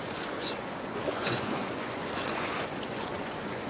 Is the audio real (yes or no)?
no